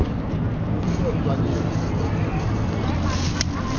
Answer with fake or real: real